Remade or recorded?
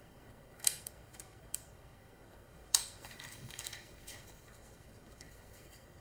remade